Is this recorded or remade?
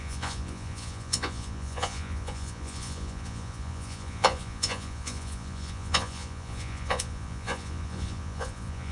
remade